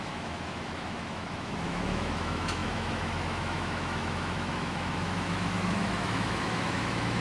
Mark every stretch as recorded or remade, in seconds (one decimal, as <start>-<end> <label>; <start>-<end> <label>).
0.0-7.2 remade